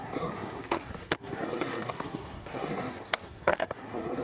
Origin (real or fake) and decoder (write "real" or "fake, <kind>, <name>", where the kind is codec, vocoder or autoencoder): fake, codec, SNAC